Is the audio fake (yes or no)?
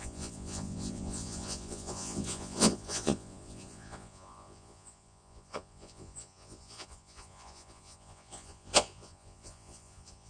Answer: yes